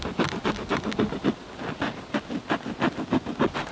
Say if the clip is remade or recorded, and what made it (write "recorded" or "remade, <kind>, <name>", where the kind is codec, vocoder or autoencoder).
recorded